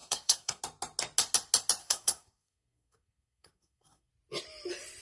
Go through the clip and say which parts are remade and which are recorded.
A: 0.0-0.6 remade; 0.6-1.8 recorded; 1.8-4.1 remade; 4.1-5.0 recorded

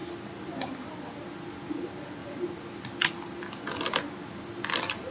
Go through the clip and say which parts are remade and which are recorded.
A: 0.0-2.2 recorded; 2.2-3.5 remade; 3.5-5.1 recorded

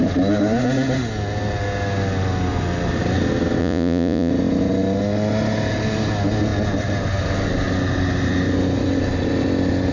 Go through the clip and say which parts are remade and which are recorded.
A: 0.0-3.6 recorded; 3.6-4.3 remade; 4.3-9.9 recorded

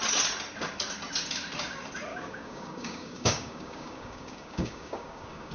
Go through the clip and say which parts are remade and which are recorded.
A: 0.0-2.1 recorded; 2.1-5.5 remade

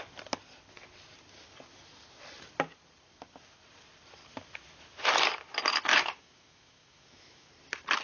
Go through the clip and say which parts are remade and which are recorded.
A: 0.0-5.9 recorded; 5.9-7.5 remade; 7.5-8.0 recorded

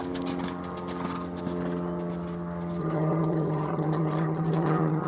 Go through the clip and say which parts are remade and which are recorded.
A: 0.0-2.8 recorded; 2.8-5.1 remade